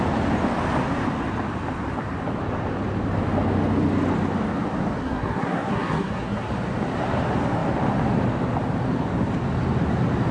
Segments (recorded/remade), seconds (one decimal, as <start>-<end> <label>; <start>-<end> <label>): 0.0-5.0 recorded; 5.0-6.5 remade; 6.5-10.3 recorded